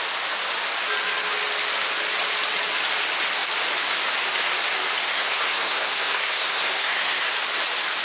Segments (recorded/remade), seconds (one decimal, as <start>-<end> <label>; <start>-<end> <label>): 0.0-5.1 recorded; 5.1-7.3 remade; 7.3-8.0 recorded